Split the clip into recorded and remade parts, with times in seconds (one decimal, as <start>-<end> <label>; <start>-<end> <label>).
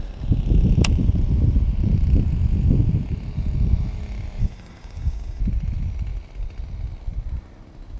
0.0-4.4 recorded; 4.4-5.4 remade; 5.4-8.0 recorded